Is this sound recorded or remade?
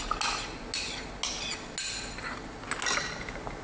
recorded